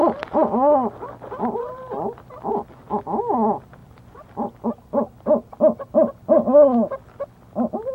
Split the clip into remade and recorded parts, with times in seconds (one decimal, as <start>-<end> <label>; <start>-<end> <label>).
0.0-7.9 recorded